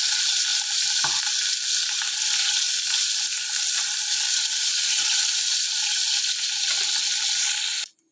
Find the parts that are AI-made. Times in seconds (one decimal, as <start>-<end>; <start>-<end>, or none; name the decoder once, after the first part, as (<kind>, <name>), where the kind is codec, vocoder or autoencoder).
4.4-5.1 (vocoder, Vocos)